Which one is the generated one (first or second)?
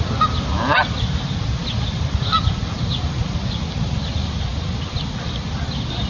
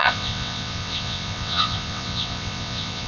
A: second